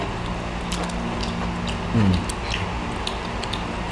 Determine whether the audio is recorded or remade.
recorded